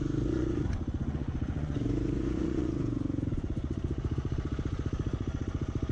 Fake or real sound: fake